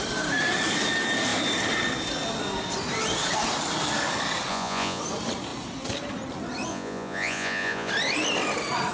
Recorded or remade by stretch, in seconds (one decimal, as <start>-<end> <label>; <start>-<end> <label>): 0.0-4.5 recorded; 4.5-5.0 remade; 5.0-6.7 recorded; 6.7-7.9 remade; 7.9-8.9 recorded